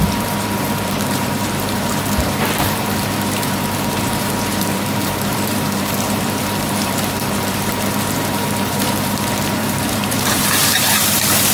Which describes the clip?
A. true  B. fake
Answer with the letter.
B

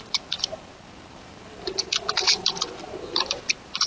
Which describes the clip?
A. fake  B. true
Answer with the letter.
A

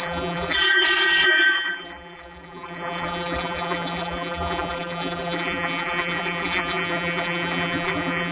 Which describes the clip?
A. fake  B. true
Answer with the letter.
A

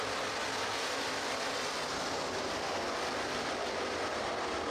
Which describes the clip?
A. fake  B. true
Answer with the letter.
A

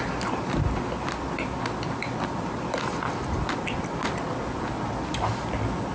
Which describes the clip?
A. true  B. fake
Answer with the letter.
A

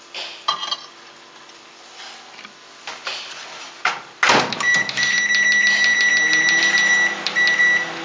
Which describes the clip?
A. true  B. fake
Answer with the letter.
A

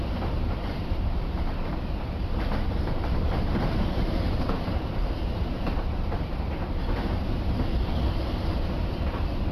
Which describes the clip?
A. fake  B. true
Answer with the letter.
A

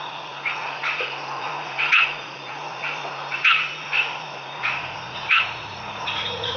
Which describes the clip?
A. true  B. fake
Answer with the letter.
B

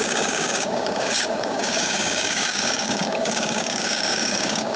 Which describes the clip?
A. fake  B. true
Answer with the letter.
A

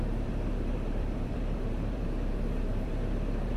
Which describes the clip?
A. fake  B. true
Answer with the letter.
A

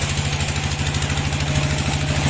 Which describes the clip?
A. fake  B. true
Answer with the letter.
B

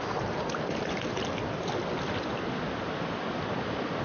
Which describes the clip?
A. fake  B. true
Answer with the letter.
B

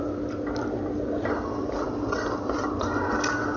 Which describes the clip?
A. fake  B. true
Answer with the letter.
B